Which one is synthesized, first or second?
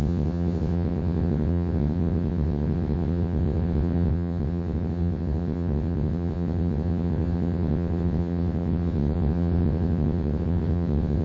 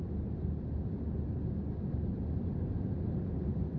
first